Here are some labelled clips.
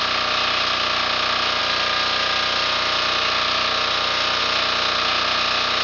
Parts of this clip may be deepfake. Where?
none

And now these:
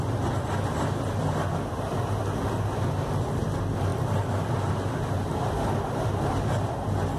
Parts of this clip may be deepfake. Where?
none

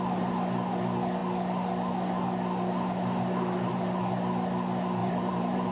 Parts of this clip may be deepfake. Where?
5.0-5.7 (vocoder, BigVGAN v2)

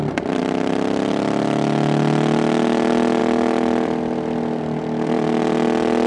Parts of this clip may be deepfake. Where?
none

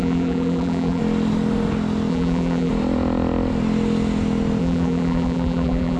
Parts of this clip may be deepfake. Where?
0.0-1.0 (vocoder, BigVGAN v2); 2.1-2.7; 4.6-6.0

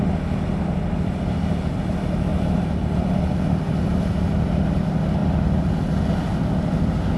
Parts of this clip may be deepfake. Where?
2.3-3.1 (vocoder, BigVGAN v2); 3.9-4.6

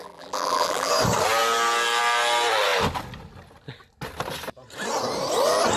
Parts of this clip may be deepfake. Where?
0.0-0.9 (vocoder, BigVGAN v2)